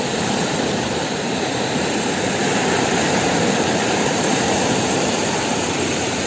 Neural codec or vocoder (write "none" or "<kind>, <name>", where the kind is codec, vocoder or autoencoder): vocoder, BigVGAN v2